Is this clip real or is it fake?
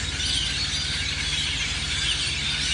real